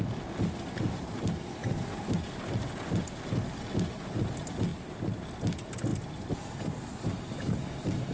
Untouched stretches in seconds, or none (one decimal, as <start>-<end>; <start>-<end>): 0.0-1.6; 2.8-5.9; 7.3-8.1